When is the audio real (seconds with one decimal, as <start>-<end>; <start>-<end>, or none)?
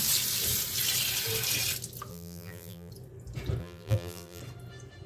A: 0.0-2.1; 2.9-3.6; 4.4-5.1